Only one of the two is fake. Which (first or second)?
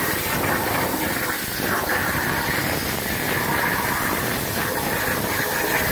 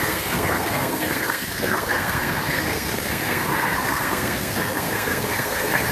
second